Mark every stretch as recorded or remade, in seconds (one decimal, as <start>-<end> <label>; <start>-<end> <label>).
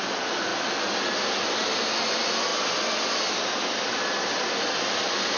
0.0-5.4 recorded